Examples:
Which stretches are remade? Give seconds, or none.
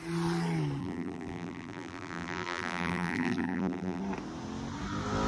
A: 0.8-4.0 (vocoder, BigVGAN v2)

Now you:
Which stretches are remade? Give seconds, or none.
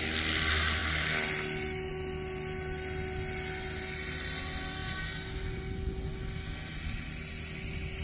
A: none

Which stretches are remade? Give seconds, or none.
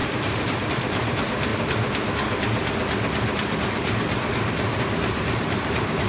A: 0.0-1.5 (vocoder, BigVGAN v2); 4.8-6.1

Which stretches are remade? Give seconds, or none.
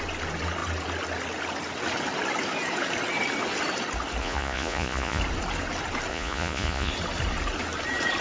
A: 4.2-5.2 (vocoder, Vocos); 6.1-6.9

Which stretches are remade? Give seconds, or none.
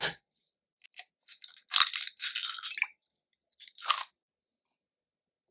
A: none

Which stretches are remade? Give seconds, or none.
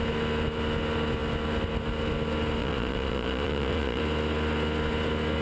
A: 2.6-4.0 (vocoder, Vocos)